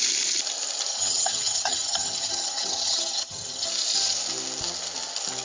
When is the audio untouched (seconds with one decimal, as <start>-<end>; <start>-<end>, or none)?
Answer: 0.0-0.9; 3.7-5.4